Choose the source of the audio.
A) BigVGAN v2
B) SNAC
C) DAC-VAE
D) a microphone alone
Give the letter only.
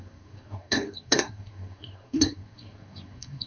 B